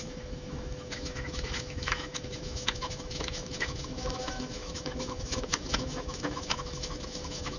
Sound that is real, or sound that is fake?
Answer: fake